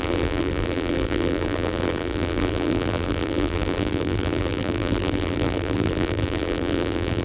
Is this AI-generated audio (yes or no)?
yes